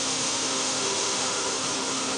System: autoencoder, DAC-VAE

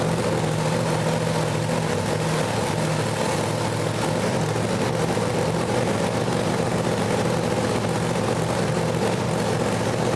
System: none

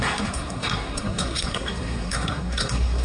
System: codec, SNAC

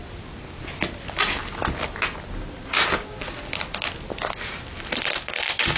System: none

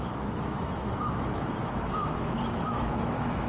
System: autoencoder, DAC-VAE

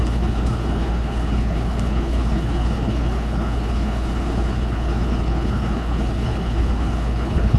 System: codec, HILCodec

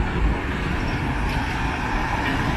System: none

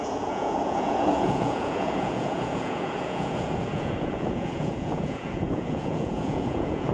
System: vocoder, Vocos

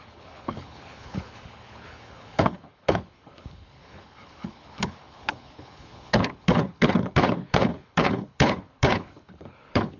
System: codec, HILCodec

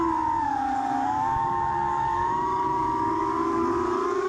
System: codec, DAC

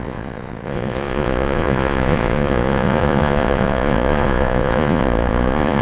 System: vocoder, Vocos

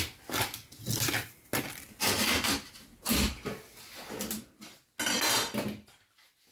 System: none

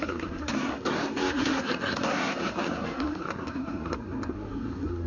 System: codec, SNAC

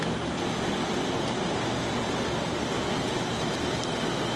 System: none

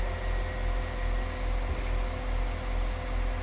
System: none